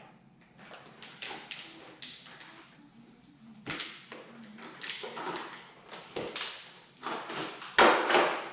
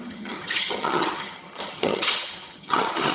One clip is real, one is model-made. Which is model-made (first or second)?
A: second